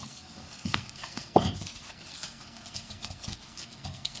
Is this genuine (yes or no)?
no